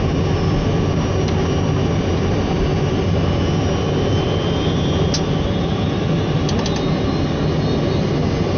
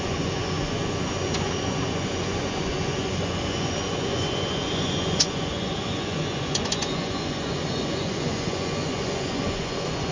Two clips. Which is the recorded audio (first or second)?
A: first